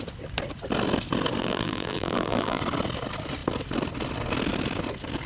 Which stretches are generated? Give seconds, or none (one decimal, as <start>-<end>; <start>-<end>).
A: 1.4-2.6